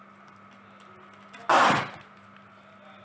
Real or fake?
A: real